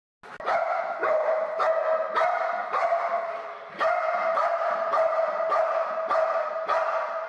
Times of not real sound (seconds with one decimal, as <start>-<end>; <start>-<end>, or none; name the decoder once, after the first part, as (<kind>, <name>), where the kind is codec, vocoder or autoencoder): 1.0-1.8 (vocoder, BigVGAN v2); 2.6-6.5